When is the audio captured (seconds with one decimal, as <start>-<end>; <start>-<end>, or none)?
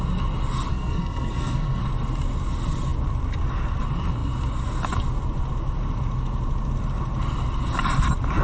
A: 0.0-0.7; 1.8-8.4